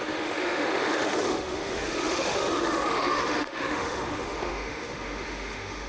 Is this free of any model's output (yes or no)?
no